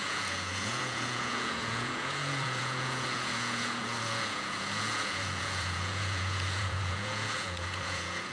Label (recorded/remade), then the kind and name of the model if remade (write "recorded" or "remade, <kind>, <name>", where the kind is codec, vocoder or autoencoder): remade, vocoder, Vocos